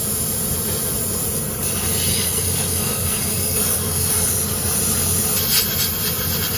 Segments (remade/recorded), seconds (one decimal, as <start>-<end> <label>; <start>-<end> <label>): 0.0-2.1 recorded; 2.1-4.3 remade; 4.3-6.6 recorded